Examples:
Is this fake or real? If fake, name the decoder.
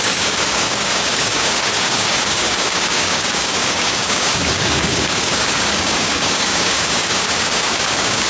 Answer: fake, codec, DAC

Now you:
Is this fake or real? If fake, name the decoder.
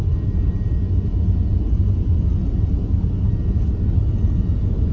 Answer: real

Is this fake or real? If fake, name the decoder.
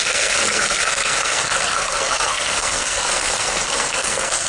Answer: fake, codec, SNAC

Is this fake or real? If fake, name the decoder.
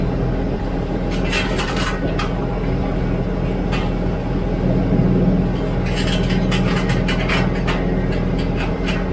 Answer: real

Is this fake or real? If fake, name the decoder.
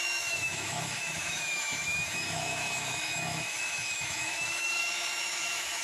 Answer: fake, autoencoder, DAC-VAE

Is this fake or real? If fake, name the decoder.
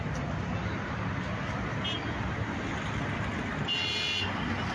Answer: real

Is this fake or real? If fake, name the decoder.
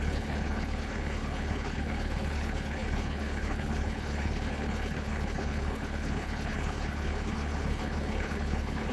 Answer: fake, codec, HILCodec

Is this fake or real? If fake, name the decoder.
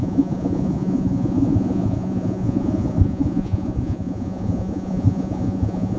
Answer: fake, vocoder, Vocos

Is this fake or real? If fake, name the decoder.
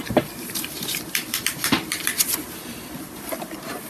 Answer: fake, vocoder, BigVGAN v2